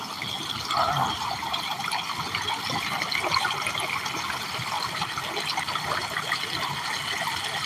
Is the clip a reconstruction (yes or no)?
no